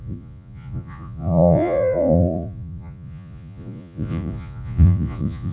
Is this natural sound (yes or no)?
no